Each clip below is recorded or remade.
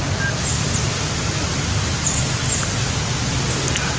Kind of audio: recorded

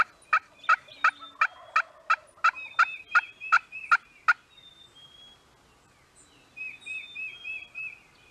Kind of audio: recorded